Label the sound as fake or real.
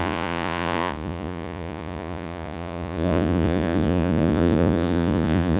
fake